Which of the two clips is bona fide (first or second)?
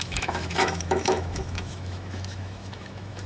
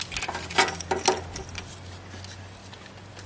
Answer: second